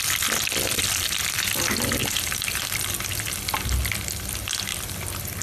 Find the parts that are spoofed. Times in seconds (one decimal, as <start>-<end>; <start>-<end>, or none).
2.0-3.3; 4.7-5.4